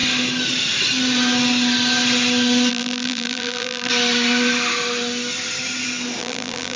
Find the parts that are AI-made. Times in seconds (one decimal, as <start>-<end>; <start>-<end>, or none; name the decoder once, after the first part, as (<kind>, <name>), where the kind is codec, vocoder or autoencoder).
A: 2.7-3.9 (vocoder, BigVGAN v2); 6.2-6.8

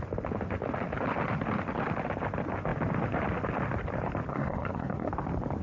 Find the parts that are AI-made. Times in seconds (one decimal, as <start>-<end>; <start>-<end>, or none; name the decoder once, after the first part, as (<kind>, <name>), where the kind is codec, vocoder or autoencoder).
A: 4.3-5.1 (codec, SNAC)

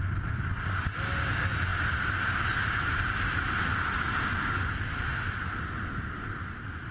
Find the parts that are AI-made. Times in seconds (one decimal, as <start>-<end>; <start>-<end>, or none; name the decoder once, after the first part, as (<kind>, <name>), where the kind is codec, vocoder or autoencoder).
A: none

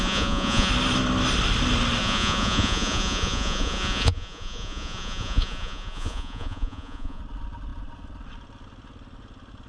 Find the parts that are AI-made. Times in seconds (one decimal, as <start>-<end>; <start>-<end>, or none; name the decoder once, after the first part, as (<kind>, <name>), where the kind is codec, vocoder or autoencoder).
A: 0.0-0.7 (vocoder, Vocos); 2.0-7.2

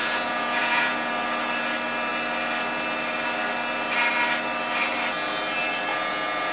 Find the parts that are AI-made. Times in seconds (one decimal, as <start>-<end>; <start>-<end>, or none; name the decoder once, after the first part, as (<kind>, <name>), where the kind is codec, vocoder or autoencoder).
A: 0.0-1.1 (vocoder, Vocos); 5.9-6.5

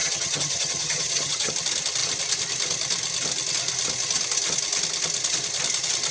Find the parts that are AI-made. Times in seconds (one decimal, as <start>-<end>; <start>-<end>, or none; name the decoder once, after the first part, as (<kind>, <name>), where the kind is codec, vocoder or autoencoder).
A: 0.0-1.5 (vocoder, HiFi-GAN)

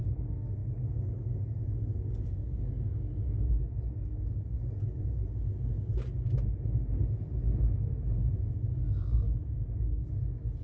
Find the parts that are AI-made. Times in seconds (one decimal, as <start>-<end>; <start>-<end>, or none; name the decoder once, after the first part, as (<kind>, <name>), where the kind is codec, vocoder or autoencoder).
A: 0.6-5.0 (codec, DAC)